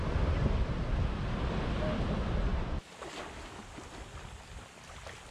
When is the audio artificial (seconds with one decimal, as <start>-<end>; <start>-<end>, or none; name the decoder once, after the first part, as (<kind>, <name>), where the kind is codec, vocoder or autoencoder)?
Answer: none